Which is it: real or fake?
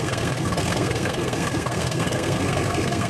fake